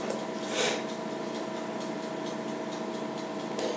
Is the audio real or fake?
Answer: real